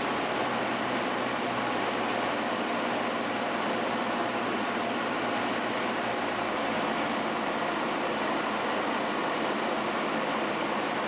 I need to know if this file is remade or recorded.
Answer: recorded